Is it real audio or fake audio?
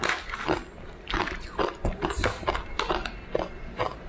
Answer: real